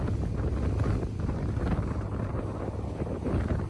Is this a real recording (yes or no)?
yes